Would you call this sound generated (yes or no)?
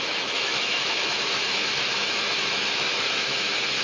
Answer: yes